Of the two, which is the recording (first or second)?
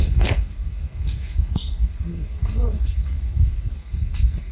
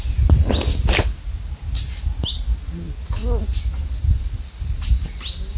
second